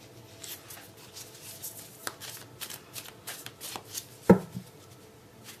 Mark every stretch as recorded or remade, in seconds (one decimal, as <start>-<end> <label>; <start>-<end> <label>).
0.0-5.6 recorded